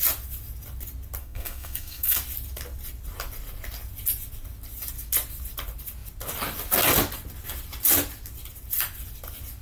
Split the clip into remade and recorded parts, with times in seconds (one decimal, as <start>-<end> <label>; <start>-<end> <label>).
0.0-1.2 recorded; 1.2-2.2 remade; 2.2-9.6 recorded